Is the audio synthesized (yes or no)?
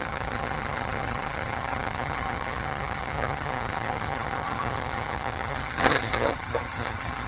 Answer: yes